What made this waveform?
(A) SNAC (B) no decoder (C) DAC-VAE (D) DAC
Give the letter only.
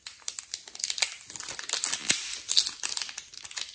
B